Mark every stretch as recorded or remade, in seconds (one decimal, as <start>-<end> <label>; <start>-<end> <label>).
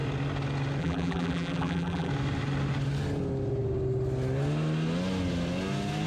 0.0-0.8 recorded; 0.8-2.1 remade; 2.1-6.1 recorded